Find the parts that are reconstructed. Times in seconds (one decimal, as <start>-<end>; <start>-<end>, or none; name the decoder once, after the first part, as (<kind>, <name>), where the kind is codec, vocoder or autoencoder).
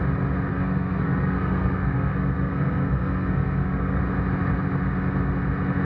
0.5-4.0 (codec, SNAC)